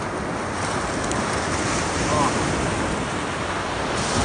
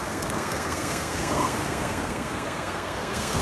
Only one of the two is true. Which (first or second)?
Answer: first